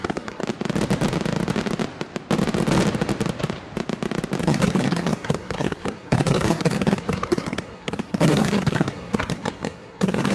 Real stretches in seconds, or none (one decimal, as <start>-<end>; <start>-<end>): 0.4-4.4